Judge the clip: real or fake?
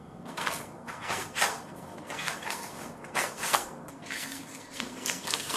fake